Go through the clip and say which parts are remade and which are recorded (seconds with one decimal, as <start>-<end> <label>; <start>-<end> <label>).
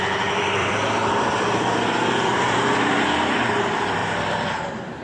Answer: 0.0-0.6 recorded; 0.6-3.6 remade; 3.6-4.0 recorded; 4.0-5.0 remade